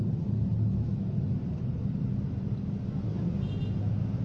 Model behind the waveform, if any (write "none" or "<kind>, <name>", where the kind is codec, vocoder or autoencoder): none